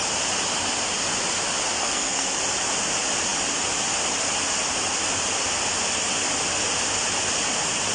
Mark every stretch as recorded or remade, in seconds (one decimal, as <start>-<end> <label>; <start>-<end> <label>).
0.0-1.8 recorded; 1.8-2.4 remade; 2.4-7.9 recorded